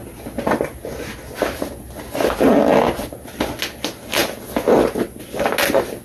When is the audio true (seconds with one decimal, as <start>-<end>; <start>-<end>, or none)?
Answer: 0.0-6.0